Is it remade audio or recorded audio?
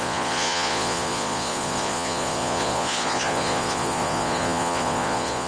remade